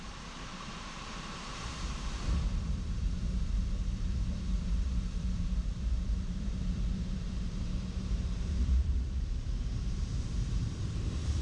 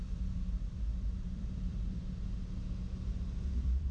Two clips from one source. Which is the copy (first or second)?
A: first